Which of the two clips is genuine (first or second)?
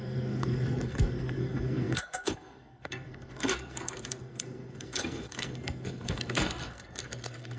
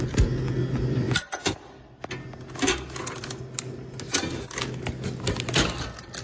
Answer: second